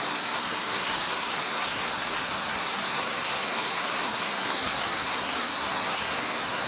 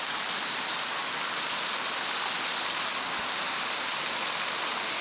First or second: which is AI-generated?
first